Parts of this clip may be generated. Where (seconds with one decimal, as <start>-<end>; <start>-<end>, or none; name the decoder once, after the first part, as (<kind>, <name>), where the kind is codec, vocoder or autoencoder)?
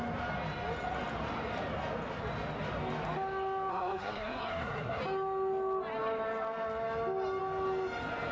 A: 3.7-5.0 (codec, SNAC)